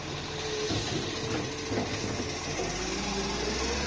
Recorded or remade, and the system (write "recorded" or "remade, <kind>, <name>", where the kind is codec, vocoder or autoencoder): recorded